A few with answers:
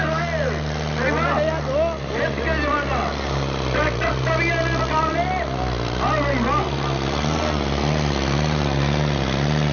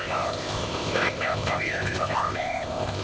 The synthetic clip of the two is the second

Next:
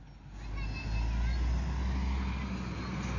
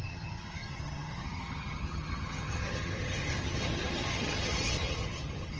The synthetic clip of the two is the second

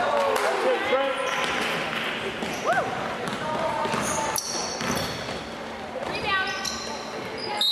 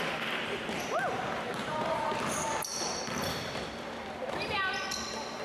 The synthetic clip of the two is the second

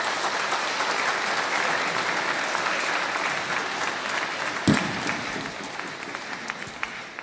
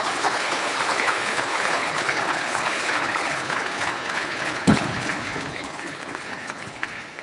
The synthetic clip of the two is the second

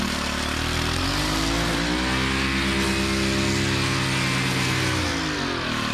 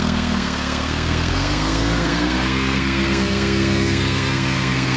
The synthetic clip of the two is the second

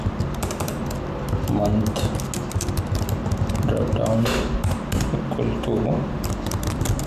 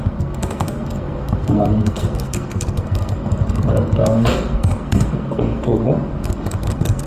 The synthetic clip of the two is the second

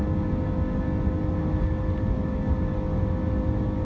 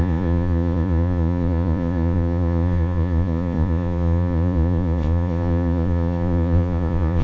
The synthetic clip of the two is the second